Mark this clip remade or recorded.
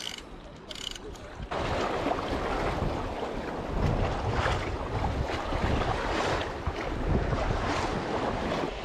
recorded